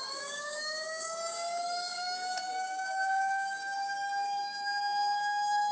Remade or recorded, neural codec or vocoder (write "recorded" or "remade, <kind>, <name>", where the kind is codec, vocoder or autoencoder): remade, codec, DAC